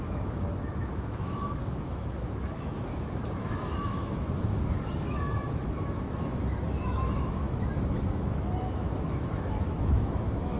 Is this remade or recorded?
remade